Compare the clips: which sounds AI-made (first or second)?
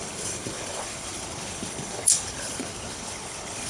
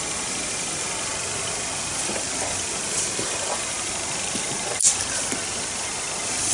first